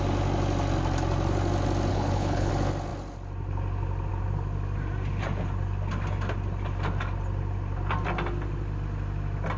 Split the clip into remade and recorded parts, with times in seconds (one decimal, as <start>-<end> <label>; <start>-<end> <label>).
0.0-1.9 recorded; 1.9-2.5 remade; 2.5-9.6 recorded